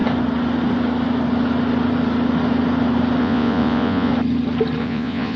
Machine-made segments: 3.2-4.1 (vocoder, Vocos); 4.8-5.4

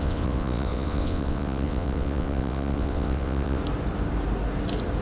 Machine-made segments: 0.0-3.6 (vocoder, WaveNeXt)

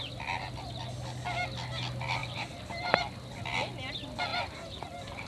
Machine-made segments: 2.2-3.0 (vocoder, BigVGAN v2); 4.3-5.3

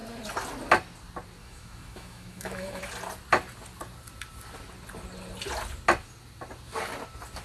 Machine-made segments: 1.4-2.8 (autoencoder, DAC-VAE)